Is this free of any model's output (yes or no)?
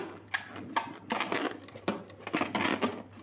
yes